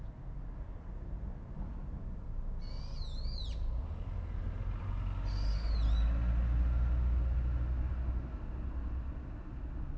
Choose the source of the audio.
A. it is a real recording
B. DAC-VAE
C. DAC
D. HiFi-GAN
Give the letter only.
A